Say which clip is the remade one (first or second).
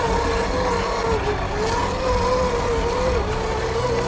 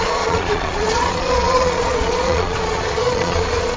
second